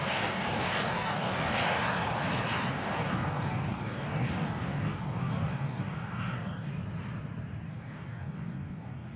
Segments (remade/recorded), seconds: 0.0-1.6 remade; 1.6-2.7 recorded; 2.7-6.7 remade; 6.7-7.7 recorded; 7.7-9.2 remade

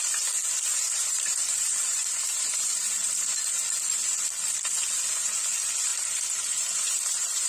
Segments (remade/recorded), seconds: 0.0-0.7 recorded; 0.7-3.5 remade; 3.5-5.9 recorded; 5.9-7.5 remade

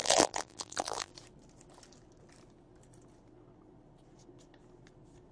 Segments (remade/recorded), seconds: 0.0-1.1 remade; 1.1-5.3 recorded

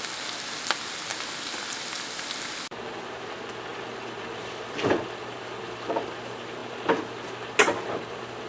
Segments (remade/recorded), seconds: 0.0-3.7 recorded; 3.7-5.8 remade; 5.8-8.5 recorded

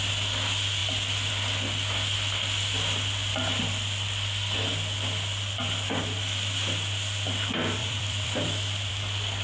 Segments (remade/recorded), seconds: 0.0-7.8 recorded; 7.8-8.9 remade; 8.9-9.4 recorded

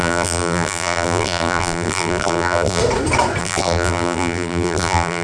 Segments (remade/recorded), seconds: 0.0-2.8 remade; 2.8-3.4 recorded; 3.4-5.2 remade

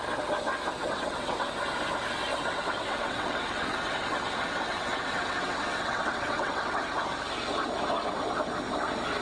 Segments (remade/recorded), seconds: 0.0-0.8 recorded; 0.8-1.5 remade; 1.5-2.3 recorded; 2.3-6.8 remade; 6.8-9.2 recorded